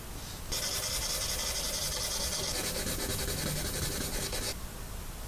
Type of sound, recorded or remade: recorded